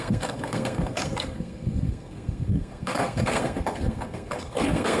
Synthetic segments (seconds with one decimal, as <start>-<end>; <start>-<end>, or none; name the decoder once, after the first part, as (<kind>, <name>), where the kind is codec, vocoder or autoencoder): 0.0-5.0 (codec, SNAC)